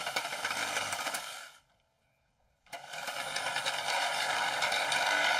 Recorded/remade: remade